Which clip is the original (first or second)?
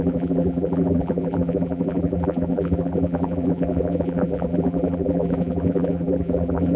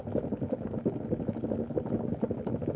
second